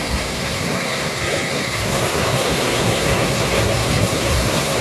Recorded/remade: remade